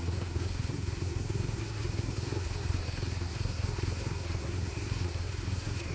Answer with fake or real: fake